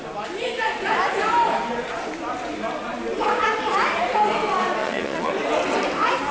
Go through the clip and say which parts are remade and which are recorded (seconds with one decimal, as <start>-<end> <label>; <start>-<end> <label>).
0.0-4.8 recorded; 4.8-5.3 remade; 5.3-6.3 recorded